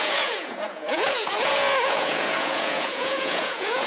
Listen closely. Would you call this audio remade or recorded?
remade